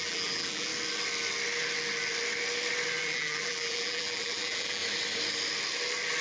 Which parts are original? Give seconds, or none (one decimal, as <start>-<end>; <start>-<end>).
0.7-3.0; 4.8-6.2